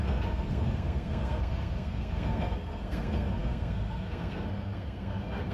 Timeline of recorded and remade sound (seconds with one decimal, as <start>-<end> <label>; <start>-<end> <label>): 0.0-5.5 remade

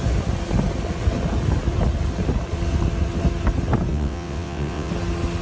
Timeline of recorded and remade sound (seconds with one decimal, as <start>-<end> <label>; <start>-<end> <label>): 0.0-3.9 recorded; 3.9-4.9 remade; 4.9-5.4 recorded

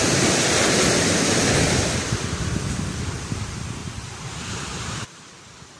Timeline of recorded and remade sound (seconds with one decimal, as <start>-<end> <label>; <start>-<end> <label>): 0.0-3.8 recorded; 3.8-4.3 remade; 4.3-4.7 recorded; 4.7-5.3 remade; 5.3-5.8 recorded

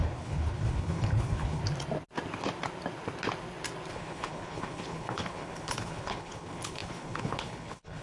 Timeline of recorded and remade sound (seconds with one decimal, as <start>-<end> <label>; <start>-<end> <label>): 0.0-1.6 remade; 1.6-3.9 recorded; 3.9-8.0 remade

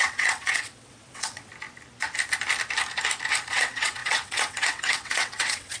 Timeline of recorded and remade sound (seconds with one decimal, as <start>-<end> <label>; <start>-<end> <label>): 0.0-1.5 remade; 1.5-3.5 recorded; 3.5-5.8 remade

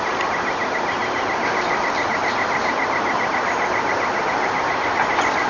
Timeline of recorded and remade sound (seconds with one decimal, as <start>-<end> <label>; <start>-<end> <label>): 0.0-5.5 recorded

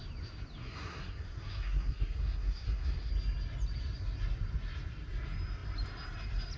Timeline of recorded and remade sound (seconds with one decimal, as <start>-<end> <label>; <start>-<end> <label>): 0.0-0.6 recorded; 0.6-3.1 remade; 3.1-6.6 recorded